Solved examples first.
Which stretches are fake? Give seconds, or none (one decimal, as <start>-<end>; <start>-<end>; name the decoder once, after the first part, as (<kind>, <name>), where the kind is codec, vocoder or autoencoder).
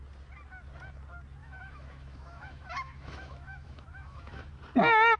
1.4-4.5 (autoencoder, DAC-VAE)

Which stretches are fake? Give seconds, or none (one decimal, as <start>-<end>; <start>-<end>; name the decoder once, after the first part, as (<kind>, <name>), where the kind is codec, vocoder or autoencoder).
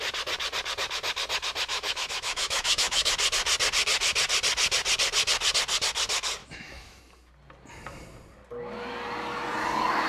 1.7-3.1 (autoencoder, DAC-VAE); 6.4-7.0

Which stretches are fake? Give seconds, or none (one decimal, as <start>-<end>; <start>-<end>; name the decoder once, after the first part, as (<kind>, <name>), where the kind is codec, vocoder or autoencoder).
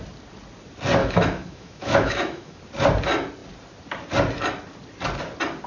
1.0-2.6 (autoencoder, DAC-VAE)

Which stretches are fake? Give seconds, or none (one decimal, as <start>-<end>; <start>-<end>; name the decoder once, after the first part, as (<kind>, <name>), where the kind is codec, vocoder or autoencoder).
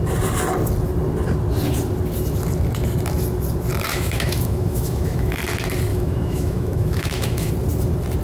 3.9-5.4 (autoencoder, DAC-VAE); 5.9-7.5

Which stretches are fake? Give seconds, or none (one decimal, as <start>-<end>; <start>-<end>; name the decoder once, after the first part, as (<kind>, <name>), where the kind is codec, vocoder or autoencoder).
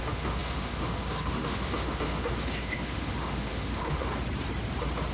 0.0-4.1 (autoencoder, DAC-VAE)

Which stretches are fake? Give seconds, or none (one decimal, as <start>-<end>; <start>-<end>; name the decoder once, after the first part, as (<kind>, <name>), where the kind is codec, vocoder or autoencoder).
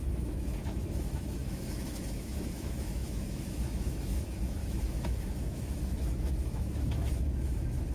0.0-7.9 (autoencoder, DAC-VAE)